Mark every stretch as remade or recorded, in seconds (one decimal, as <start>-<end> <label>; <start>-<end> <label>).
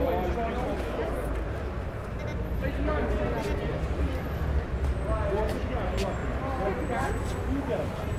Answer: 0.0-8.2 recorded